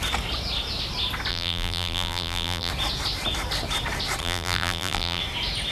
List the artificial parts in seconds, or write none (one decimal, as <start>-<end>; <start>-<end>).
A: 1.3-2.7; 4.2-5.2